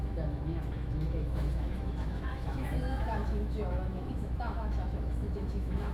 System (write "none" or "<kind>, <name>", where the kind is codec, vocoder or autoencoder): autoencoder, DAC-VAE